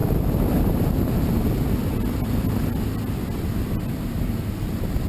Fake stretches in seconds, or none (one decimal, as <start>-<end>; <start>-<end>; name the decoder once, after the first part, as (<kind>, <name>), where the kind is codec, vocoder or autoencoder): none